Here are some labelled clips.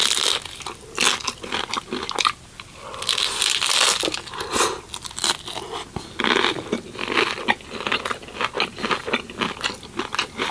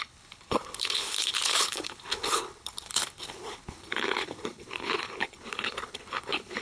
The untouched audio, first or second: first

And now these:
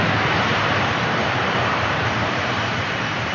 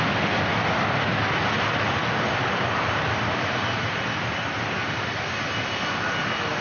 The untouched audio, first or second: second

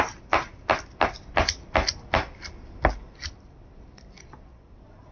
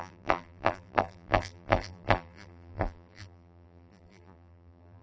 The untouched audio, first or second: first